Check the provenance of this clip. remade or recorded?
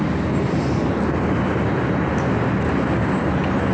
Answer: recorded